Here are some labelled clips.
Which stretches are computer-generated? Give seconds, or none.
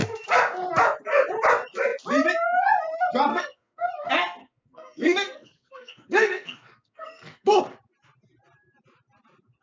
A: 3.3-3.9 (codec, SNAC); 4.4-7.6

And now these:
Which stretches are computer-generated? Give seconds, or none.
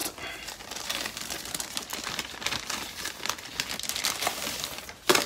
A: none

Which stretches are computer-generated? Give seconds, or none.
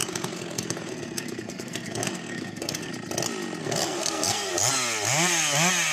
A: 0.0-2.9 (codec, SNAC); 3.6-4.5